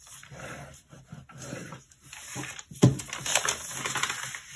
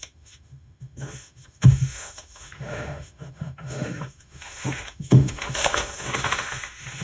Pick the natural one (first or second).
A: first